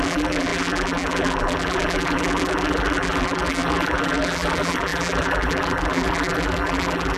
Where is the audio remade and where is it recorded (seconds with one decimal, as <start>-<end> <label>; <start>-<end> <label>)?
0.0-7.2 remade